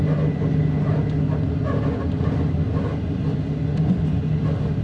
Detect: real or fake real